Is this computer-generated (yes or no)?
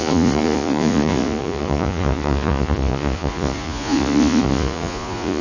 yes